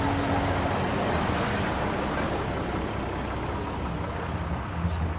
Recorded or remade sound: recorded